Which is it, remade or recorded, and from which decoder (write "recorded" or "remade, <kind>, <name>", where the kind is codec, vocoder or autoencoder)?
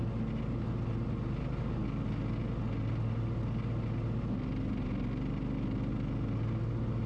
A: recorded